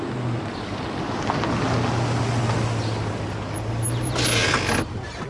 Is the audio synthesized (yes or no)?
no